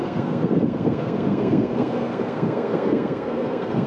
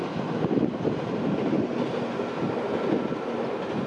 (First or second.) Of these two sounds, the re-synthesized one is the first